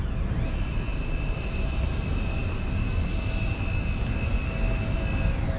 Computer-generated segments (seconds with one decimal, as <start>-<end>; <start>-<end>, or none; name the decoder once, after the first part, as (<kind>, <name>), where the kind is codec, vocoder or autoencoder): 0.9-1.9 (vocoder, BigVGAN v2)

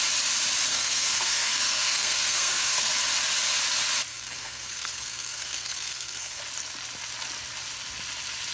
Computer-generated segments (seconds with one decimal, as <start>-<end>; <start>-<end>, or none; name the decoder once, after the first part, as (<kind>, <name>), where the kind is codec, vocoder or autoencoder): 0.7-2.9 (codec, SNAC); 4.1-6.4

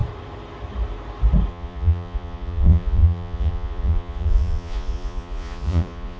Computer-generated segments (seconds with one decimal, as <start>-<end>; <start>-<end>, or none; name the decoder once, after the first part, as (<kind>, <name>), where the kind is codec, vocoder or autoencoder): 1.5-6.2 (vocoder, Vocos)

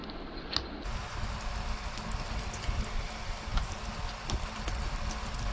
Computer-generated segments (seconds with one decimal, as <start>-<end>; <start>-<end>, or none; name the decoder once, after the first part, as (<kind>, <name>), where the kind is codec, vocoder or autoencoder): none

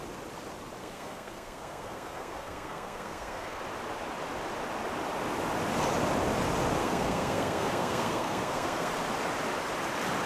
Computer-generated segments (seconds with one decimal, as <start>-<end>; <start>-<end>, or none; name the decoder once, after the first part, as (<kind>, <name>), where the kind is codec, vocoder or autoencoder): 0.8-3.6 (codec, SNAC); 6.8-8.9

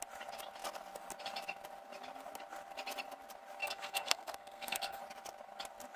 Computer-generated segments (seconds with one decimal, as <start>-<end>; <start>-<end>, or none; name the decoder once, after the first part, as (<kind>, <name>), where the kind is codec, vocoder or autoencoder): 3.6-5.0 (codec, SNAC)